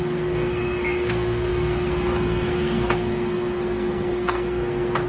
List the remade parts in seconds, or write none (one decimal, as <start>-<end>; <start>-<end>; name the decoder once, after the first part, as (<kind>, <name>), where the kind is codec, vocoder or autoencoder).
0.0-5.1 (codec, SNAC)